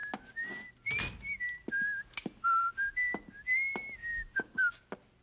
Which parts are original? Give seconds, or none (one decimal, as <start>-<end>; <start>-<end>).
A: 0.0-4.1; 4.8-5.2